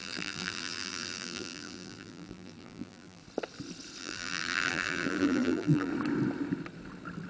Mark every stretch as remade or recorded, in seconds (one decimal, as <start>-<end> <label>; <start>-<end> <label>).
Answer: 0.0-3.2 remade; 3.2-4.0 recorded; 4.0-5.9 remade; 5.9-7.3 recorded